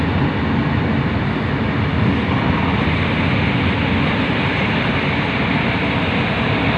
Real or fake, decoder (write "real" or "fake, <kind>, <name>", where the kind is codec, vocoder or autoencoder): real